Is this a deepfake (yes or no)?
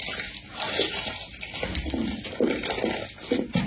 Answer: no